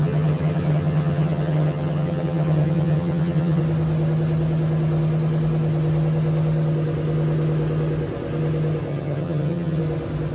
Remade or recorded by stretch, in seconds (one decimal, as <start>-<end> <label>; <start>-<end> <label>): 0.0-3.6 remade; 3.6-8.9 recorded; 8.9-9.8 remade; 9.8-10.3 recorded